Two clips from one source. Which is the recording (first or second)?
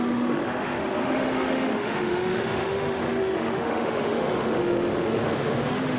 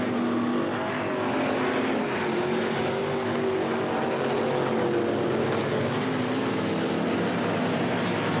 second